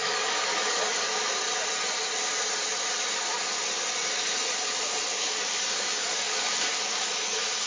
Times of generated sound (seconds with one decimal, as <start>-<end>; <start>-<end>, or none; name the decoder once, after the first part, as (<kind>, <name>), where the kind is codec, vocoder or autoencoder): 0.0-1.0 (codec, DAC); 5.1-7.7